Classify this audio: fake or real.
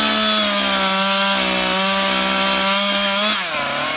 real